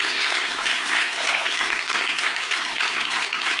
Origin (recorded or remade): remade